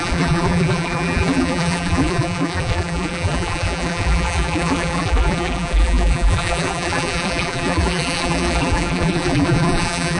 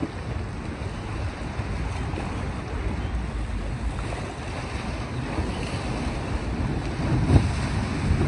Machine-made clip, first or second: first